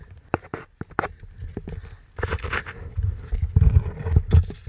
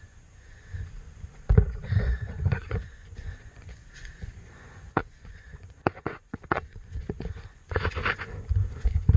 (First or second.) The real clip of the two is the first